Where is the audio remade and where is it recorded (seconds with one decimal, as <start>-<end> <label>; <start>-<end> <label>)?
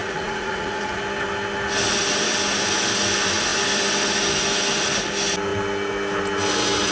0.0-1.0 remade; 1.0-6.9 recorded